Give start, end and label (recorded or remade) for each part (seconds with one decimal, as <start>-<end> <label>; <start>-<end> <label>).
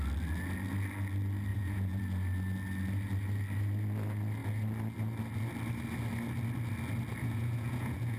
0.0-1.5 recorded; 1.5-2.0 remade; 2.0-7.2 recorded; 7.2-8.2 remade